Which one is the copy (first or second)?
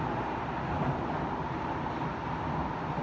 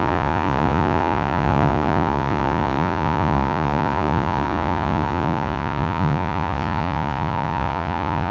second